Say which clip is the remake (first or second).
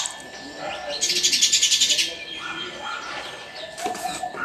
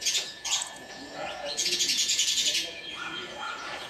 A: second